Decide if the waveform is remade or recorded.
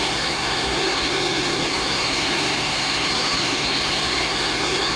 remade